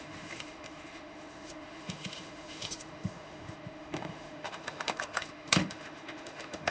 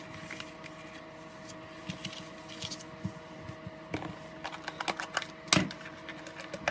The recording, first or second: second